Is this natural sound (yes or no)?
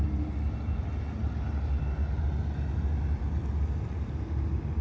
yes